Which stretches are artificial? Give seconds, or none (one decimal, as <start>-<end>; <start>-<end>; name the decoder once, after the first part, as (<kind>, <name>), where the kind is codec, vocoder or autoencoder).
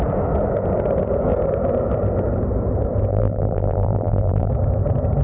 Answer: 3.1-4.5 (vocoder, BigVGAN v2)